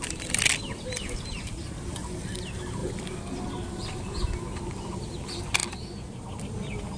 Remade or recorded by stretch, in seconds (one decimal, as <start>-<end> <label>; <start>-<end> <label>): 0.0-2.8 recorded; 2.8-4.0 remade; 4.0-5.6 recorded; 5.6-6.4 remade; 6.4-7.0 recorded